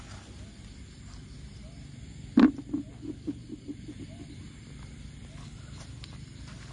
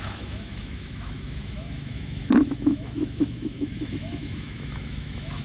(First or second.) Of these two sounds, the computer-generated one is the second